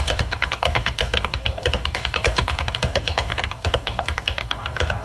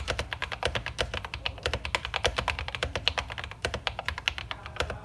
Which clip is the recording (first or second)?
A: second